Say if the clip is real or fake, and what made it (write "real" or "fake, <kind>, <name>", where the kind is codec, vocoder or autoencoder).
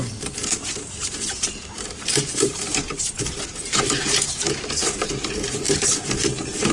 fake, vocoder, BigVGAN v2